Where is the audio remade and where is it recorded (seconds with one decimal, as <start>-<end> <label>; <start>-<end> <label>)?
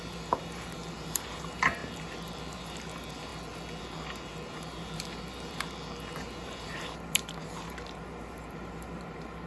0.0-3.3 remade; 3.3-3.8 recorded; 3.8-9.5 remade